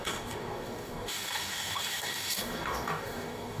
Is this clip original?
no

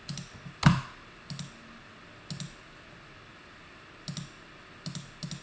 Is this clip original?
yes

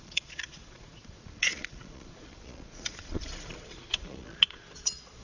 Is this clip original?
no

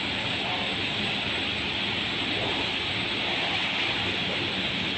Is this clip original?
yes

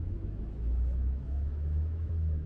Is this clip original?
no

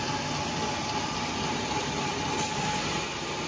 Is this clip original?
yes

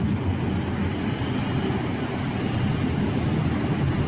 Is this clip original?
yes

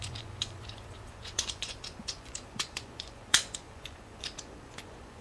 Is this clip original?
no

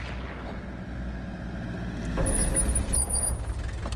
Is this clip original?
yes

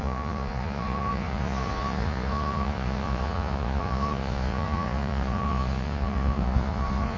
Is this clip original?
no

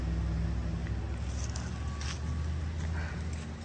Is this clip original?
yes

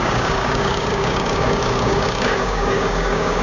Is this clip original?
no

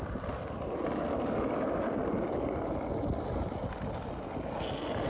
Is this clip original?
yes